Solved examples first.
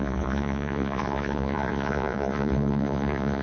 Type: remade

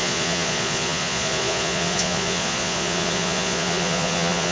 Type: remade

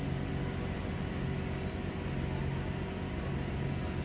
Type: recorded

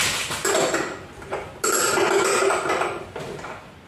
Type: recorded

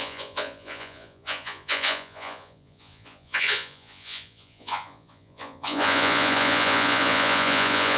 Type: remade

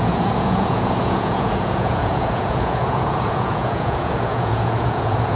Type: remade